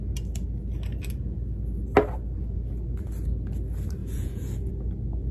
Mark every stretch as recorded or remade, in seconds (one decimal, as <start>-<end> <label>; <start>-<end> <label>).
0.0-4.0 recorded; 4.0-4.7 remade; 4.7-5.3 recorded